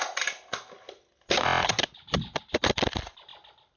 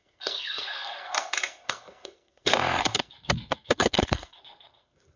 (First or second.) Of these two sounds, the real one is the first